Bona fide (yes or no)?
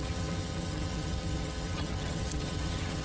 no